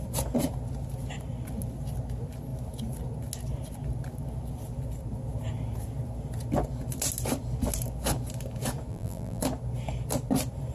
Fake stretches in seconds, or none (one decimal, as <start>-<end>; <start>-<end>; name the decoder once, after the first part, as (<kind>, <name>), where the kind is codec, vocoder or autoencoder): 8.9-9.4 (vocoder, BigVGAN v2)